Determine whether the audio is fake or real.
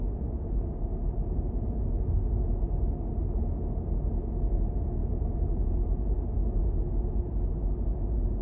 real